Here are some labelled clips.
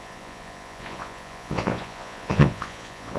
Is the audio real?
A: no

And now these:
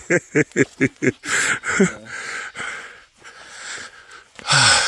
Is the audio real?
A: no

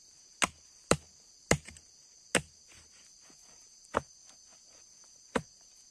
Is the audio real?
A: yes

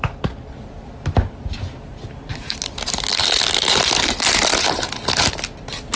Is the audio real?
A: yes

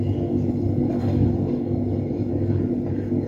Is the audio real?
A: no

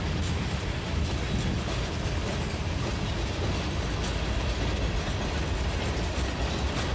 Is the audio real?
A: yes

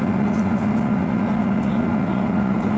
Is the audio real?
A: no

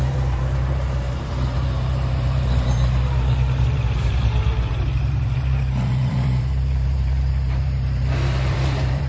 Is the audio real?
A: no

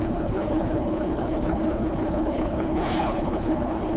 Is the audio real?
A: no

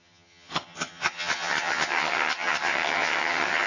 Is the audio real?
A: no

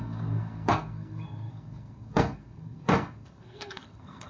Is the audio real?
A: no